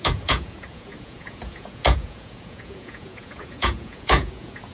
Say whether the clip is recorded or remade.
remade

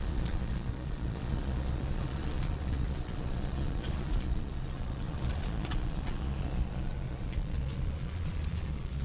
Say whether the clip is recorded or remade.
remade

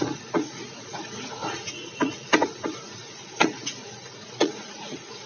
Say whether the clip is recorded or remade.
remade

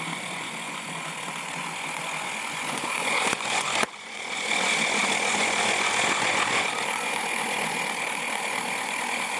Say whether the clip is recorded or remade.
remade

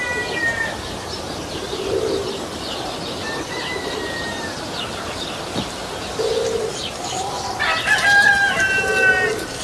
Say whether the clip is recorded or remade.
recorded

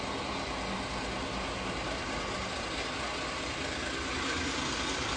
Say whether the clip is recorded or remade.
recorded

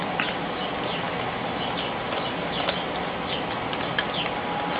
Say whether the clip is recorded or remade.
recorded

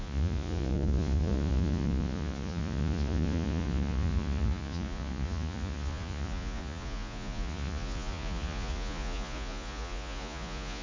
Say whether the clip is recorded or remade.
remade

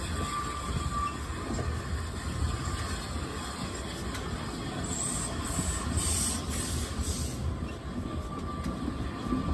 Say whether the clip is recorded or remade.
recorded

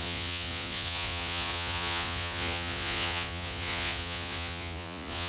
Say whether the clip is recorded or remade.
remade